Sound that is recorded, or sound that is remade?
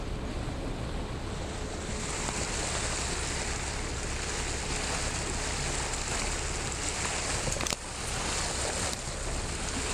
recorded